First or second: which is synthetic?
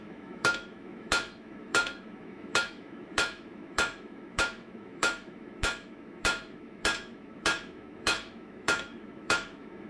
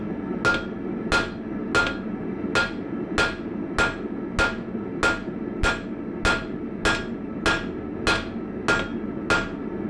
first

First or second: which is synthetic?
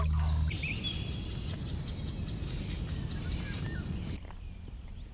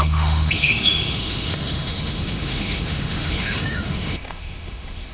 second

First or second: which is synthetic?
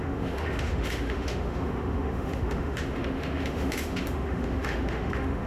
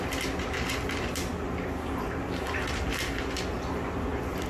first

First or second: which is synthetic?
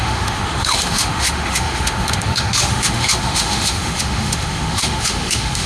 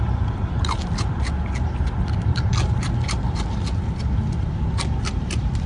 first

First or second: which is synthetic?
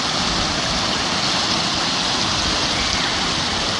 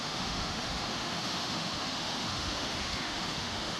second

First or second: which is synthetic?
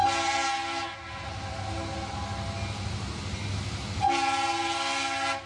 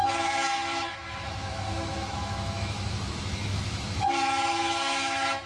second